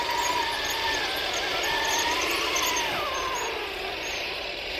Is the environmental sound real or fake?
real